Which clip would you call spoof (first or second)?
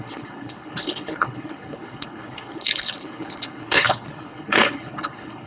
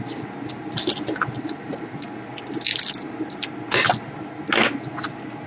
first